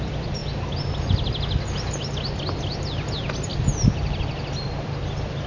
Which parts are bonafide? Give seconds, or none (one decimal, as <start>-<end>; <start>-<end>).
0.0-5.5